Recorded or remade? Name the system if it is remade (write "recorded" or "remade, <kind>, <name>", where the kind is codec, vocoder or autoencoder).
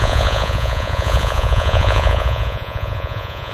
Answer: remade, vocoder, Vocos